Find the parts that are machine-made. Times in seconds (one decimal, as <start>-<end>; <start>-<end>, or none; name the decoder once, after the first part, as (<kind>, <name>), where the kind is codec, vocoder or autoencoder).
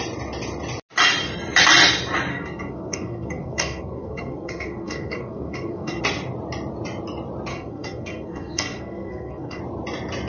2.3-6.0 (codec, SNAC); 7.5-9.6